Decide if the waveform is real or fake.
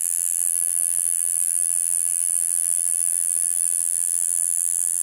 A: fake